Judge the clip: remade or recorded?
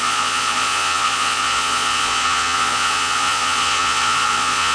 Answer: remade